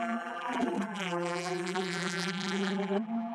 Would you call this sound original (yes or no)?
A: no